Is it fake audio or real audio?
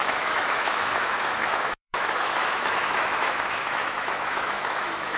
fake